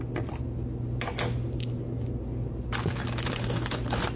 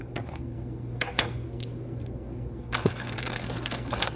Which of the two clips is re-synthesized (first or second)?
second